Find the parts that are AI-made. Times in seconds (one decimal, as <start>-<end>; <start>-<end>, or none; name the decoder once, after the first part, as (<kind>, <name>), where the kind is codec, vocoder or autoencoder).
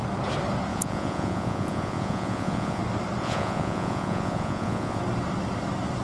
0.7-2.8 (vocoder, Vocos); 3.2-5.0